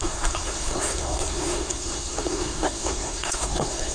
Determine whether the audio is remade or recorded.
remade